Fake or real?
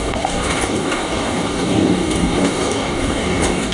fake